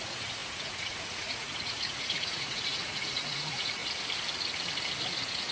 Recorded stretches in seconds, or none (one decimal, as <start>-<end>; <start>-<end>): 3.8-5.1